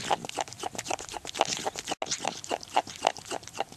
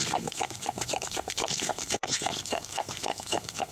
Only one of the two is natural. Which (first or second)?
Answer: first